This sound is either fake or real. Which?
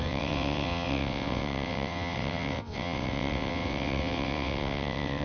fake